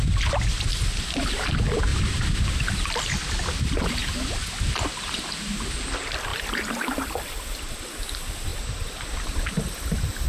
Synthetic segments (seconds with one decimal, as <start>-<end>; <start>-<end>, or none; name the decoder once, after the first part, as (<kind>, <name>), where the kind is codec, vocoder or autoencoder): 1.9-3.3 (vocoder, BigVGAN v2); 6.3-7.3